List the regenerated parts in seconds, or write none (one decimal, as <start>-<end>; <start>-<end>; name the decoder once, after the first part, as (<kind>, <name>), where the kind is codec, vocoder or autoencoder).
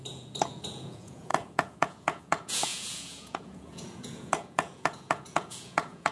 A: 0.0-6.1 (vocoder, Vocos)